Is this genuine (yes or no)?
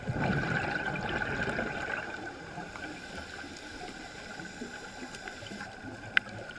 yes